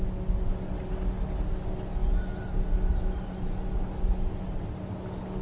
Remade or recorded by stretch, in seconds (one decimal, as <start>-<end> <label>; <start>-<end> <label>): 0.0-5.4 recorded